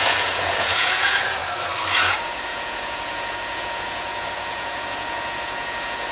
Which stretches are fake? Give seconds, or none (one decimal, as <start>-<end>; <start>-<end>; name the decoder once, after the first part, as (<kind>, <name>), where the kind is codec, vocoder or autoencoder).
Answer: 0.0-1.4 (vocoder, Vocos); 1.9-6.1